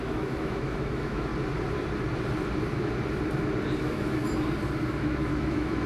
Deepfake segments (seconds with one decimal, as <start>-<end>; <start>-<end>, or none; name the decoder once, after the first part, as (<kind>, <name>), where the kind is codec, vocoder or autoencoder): 0.0-1.3 (autoencoder, DAC-VAE); 3.8-4.2; 4.9-5.9